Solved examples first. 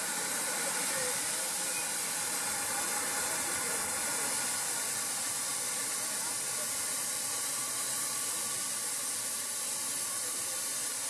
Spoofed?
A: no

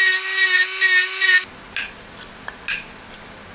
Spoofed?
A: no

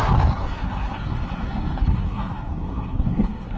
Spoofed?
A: yes